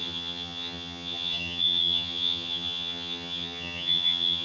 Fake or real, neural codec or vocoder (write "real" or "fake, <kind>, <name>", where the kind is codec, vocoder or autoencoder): fake, vocoder, HiFi-GAN